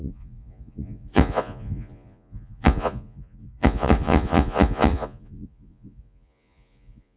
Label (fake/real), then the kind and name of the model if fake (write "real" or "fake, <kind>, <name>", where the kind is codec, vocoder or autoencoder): fake, vocoder, Vocos